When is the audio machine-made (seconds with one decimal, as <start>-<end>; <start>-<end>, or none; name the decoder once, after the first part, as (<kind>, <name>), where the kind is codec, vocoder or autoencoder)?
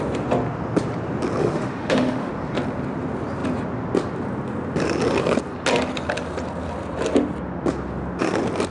1.4-2.3 (autoencoder, DAC-VAE)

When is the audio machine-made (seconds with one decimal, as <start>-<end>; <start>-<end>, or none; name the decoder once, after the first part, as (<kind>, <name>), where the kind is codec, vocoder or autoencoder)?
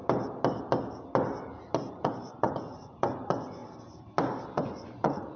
1.9-3.6 (vocoder, Vocos); 4.5-5.4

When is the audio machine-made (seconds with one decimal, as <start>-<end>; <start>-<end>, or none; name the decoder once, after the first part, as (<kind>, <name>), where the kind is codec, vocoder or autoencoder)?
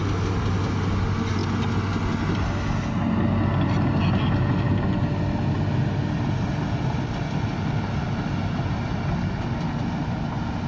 none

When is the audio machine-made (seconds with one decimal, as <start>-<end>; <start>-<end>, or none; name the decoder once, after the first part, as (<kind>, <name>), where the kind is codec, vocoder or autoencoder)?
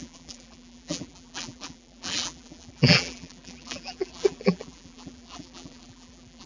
0.0-6.5 (vocoder, BigVGAN v2)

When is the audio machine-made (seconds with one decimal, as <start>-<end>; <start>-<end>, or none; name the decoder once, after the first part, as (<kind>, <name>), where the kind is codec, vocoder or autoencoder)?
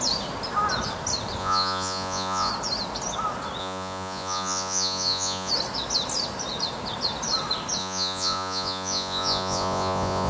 1.4-2.5 (vocoder, Vocos); 3.6-5.5; 7.8-10.3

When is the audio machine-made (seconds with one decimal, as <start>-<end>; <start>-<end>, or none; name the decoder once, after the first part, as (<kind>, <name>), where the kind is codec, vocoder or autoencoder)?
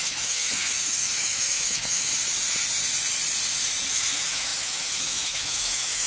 0.0-2.1 (autoencoder, DAC-VAE); 3.9-6.1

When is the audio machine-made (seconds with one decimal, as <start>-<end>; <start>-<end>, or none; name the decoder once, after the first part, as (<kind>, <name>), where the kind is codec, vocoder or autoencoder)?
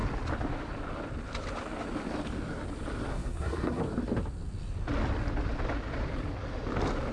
3.1-3.8 (codec, SNAC)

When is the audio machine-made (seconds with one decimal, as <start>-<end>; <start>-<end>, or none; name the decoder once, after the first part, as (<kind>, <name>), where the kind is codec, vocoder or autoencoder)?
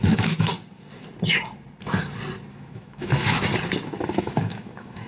0.0-0.5 (autoencoder, DAC-VAE); 2.5-3.5; 4.2-5.1